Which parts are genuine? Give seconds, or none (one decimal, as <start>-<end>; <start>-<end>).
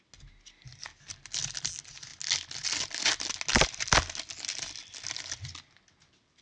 0.0-6.4